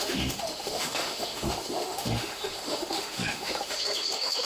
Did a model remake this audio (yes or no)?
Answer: yes